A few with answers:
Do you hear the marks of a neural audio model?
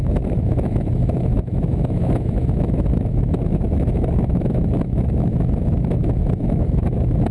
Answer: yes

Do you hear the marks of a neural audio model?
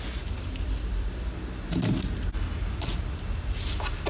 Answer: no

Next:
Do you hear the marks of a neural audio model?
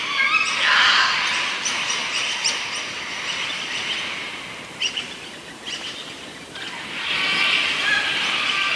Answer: no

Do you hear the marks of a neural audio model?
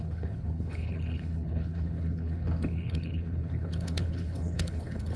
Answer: yes